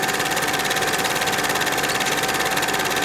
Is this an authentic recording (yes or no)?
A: yes